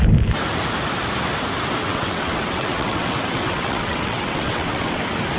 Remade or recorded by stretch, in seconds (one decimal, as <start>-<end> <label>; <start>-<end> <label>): 0.0-1.8 recorded; 1.8-5.0 remade; 5.0-5.4 recorded